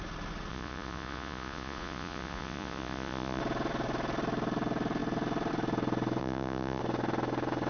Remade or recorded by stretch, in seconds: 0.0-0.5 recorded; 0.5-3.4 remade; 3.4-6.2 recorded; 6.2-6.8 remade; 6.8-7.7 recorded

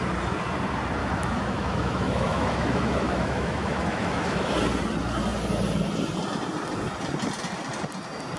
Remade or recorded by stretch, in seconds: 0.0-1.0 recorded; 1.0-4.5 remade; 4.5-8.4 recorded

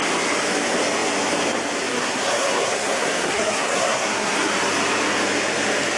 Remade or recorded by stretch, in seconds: 0.0-1.9 recorded; 1.9-4.5 remade; 4.5-6.0 recorded

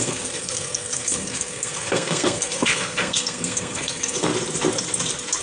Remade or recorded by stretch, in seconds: 0.0-4.3 remade; 4.3-5.4 recorded